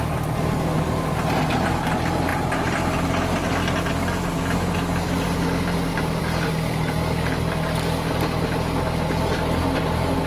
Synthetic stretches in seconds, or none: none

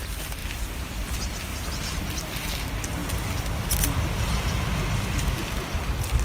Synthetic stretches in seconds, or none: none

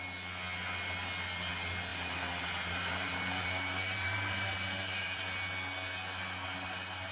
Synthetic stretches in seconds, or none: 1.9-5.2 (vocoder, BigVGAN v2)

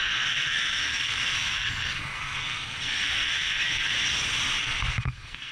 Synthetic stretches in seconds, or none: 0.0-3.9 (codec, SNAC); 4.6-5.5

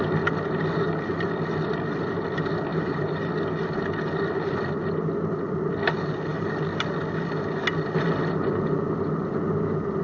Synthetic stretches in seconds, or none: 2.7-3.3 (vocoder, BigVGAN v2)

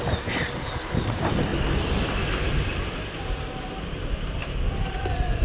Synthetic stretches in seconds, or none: 0.0-1.5 (vocoder, BigVGAN v2); 2.9-4.4; 4.9-5.4